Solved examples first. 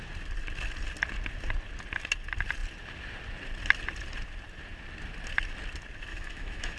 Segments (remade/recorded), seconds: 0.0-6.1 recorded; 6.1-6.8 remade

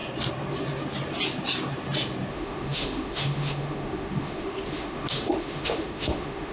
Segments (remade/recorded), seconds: 0.0-2.3 recorded; 2.3-6.5 remade

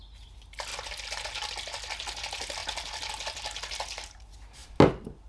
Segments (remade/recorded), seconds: 0.0-5.3 recorded

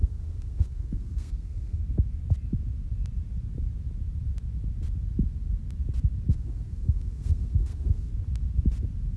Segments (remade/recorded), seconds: 0.0-1.8 remade; 1.8-6.3 recorded; 6.3-8.1 remade; 8.1-9.2 recorded

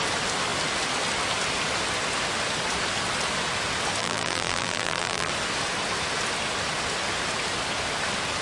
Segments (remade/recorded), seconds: 0.0-4.0 recorded; 4.0-5.3 remade; 5.3-8.4 recorded